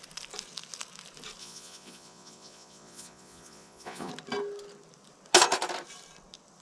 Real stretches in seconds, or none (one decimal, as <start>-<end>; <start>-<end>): 0.0-1.4; 4.1-6.6

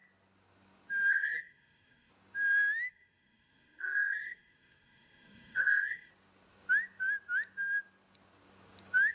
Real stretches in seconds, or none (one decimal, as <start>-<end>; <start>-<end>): 0.0-1.1; 2.1-2.9; 6.1-9.1